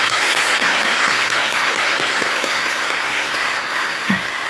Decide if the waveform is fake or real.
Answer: fake